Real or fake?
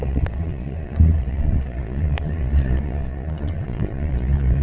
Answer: fake